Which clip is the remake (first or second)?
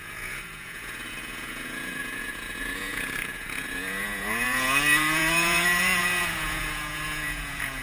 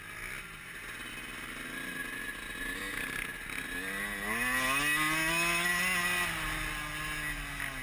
first